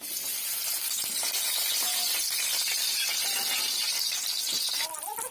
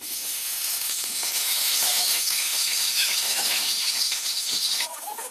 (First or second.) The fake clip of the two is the second